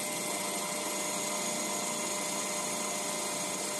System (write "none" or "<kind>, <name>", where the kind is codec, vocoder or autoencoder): none